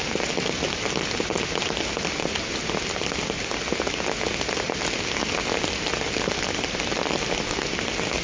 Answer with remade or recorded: recorded